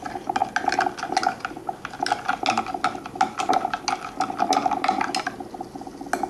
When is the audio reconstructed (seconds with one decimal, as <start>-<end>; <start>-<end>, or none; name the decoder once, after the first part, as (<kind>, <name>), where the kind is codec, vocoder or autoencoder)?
none